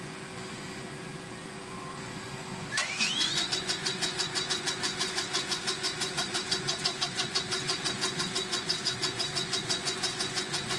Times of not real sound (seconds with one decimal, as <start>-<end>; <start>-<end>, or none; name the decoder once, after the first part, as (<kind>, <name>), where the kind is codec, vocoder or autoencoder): 0.0-10.8 (vocoder, Vocos)